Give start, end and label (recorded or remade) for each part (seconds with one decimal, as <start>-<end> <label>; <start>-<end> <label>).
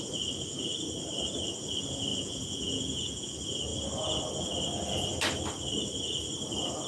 0.0-2.1 recorded; 2.1-3.3 remade; 3.3-6.9 recorded